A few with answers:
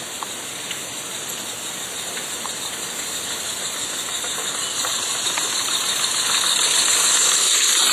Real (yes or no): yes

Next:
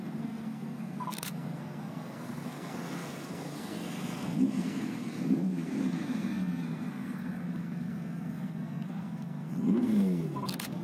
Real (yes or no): no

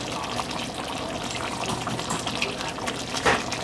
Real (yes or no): yes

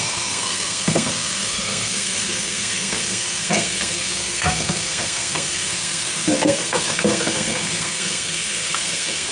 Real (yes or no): no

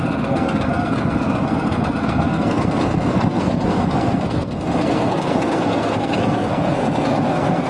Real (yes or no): no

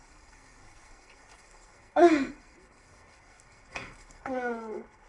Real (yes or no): no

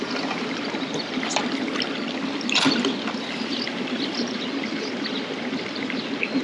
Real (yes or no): yes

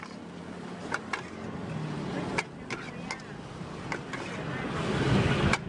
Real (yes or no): yes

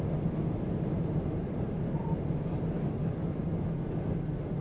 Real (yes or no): yes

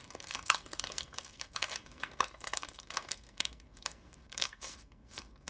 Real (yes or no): no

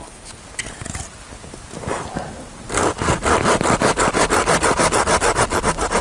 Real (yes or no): yes